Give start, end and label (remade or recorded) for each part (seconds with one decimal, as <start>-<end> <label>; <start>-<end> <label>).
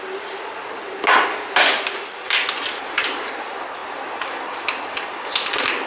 0.0-5.9 recorded